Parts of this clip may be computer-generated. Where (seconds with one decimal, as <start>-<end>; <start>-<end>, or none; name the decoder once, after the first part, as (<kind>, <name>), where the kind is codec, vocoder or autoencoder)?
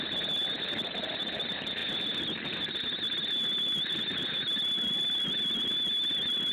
none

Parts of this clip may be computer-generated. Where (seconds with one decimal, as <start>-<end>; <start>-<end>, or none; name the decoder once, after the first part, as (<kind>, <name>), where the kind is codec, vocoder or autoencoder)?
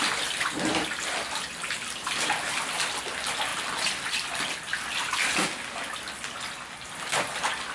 none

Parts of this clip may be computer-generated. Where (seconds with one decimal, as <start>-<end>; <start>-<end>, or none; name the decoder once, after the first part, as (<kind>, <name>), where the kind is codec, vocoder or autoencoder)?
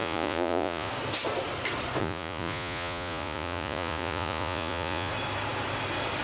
0.0-0.9 (vocoder, Vocos); 2.0-5.1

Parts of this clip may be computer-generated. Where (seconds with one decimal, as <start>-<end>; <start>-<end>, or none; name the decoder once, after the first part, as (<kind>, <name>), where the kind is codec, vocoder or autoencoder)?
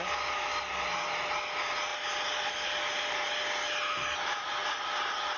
none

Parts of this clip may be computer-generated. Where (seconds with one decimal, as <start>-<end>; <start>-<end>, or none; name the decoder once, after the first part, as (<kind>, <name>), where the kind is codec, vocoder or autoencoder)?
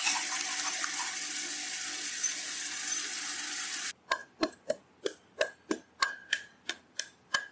none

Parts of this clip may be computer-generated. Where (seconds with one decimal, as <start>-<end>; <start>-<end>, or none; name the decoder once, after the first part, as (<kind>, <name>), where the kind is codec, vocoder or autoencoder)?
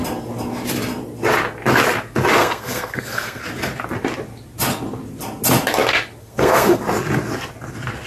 2.4-3.4 (codec, SNAC); 6.2-6.8